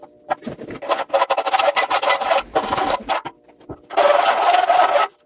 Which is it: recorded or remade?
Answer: recorded